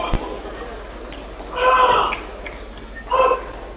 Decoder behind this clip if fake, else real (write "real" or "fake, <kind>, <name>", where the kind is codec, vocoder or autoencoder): real